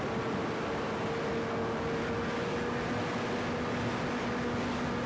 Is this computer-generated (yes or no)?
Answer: no